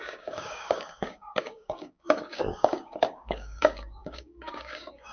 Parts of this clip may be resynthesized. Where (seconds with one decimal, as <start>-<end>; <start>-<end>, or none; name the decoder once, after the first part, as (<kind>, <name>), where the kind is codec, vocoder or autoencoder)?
0.0-5.1 (codec, DAC)